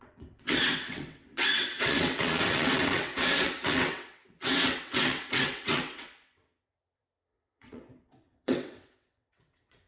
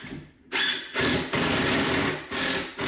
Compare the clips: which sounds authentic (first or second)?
second